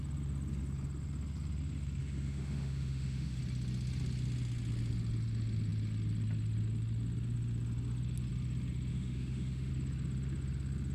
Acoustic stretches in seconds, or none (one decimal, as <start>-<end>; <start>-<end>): 0.0-2.0; 3.4-8.9; 9.7-10.9